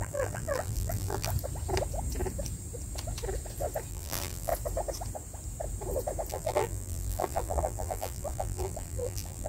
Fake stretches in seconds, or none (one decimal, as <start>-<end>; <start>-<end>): 0.0-1.3; 3.9-4.5; 6.3-9.5